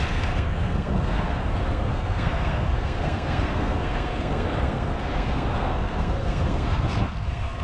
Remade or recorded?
remade